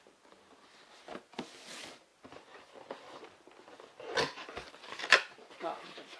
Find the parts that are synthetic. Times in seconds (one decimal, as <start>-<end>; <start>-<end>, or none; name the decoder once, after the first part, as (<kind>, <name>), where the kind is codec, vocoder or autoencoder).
none